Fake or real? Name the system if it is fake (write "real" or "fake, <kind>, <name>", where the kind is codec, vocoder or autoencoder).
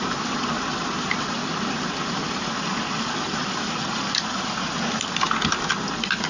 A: real